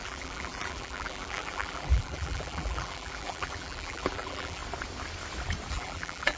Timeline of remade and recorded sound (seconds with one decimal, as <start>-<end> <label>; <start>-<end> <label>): 0.0-4.6 remade; 4.6-5.7 recorded; 5.7-6.4 remade